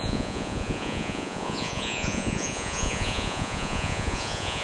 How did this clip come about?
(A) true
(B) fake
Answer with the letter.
B